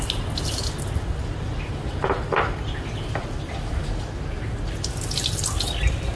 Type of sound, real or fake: real